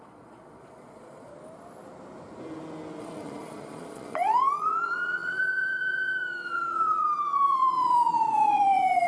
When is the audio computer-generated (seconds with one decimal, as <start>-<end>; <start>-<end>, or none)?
0.0-1.3; 3.0-9.1